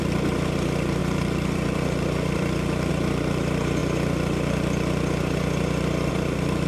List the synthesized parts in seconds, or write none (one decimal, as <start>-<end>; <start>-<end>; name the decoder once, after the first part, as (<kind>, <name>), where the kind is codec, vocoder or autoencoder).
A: 0.0-3.8 (vocoder, BigVGAN v2); 6.1-6.7